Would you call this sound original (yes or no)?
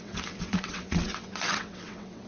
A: no